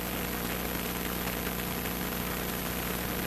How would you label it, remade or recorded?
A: recorded